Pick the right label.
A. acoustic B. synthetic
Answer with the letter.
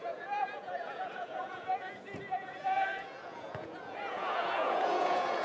B